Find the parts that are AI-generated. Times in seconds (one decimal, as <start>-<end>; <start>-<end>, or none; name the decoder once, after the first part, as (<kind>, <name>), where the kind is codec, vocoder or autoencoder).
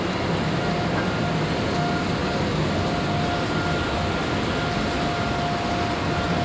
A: none